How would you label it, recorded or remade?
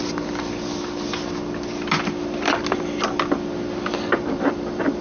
recorded